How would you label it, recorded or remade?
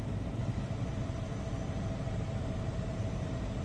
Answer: remade